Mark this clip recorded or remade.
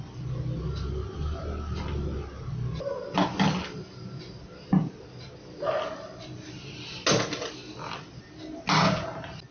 recorded